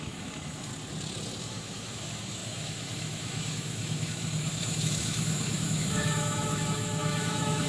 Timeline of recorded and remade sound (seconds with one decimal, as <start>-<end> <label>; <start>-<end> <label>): 0.0-0.7 remade; 0.7-1.4 recorded; 1.4-7.7 remade